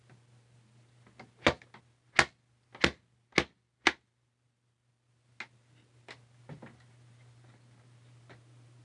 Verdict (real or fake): real